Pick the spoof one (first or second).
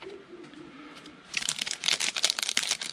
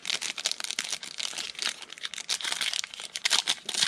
first